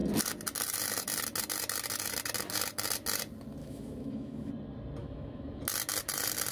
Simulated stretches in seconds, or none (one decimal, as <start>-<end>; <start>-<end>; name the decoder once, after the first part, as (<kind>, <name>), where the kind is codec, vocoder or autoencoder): 3.6-4.5 (autoencoder, DAC-VAE); 5.0-5.6